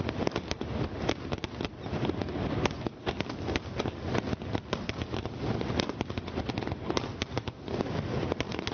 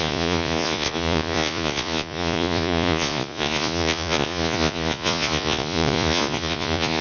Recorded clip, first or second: first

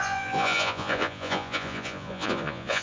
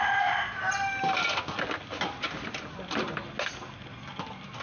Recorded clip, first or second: second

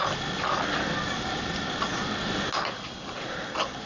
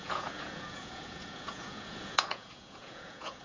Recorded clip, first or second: first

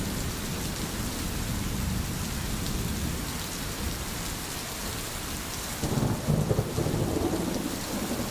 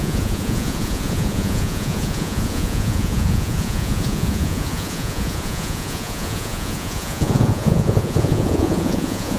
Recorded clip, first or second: first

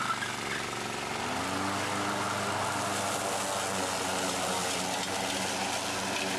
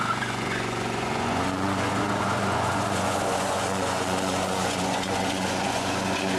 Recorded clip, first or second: first